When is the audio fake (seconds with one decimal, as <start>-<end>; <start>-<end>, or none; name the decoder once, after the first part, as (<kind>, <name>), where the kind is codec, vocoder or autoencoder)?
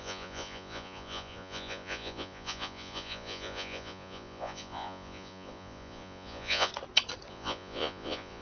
0.0-6.7 (vocoder, Vocos); 7.3-8.4